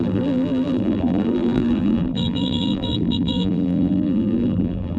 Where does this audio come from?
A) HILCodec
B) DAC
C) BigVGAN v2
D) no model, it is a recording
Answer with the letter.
C